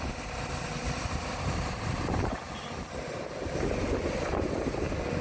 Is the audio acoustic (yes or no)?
no